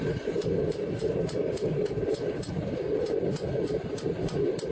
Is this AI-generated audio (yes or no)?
no